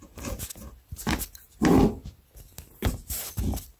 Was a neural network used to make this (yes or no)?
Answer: no